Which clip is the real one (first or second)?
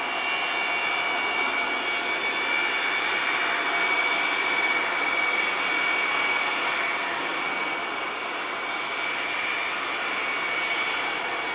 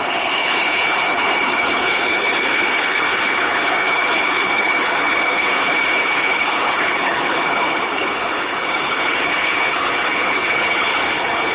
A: first